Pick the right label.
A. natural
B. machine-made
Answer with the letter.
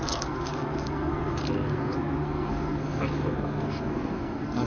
B